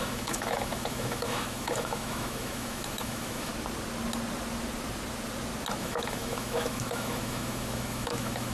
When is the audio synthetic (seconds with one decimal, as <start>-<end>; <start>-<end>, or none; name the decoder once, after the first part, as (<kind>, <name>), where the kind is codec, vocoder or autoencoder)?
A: 0.0-3.5 (autoencoder, DAC-VAE); 5.8-8.5